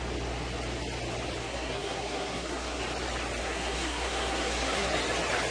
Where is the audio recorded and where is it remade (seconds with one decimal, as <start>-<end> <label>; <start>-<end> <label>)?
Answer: 0.0-1.4 recorded; 1.4-2.8 remade; 2.8-3.4 recorded; 3.4-4.9 remade; 4.9-5.5 recorded